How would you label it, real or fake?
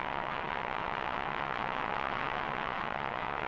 fake